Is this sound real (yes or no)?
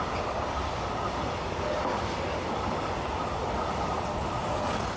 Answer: yes